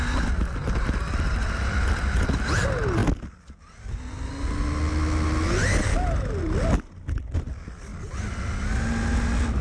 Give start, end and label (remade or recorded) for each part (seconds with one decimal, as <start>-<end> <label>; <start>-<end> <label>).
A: 0.0-9.6 recorded